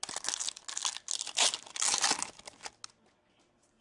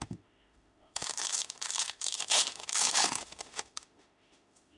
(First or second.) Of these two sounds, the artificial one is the second